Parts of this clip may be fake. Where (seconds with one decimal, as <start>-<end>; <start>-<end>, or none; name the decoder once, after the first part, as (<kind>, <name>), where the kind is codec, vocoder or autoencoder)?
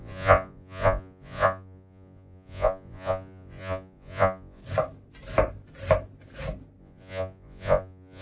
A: 0.0-4.6 (vocoder, Vocos); 6.8-8.2